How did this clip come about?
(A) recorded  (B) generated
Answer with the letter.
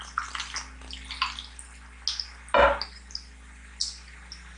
A